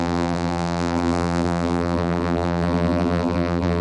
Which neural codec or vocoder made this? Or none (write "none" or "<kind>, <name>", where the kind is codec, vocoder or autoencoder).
vocoder, BigVGAN v2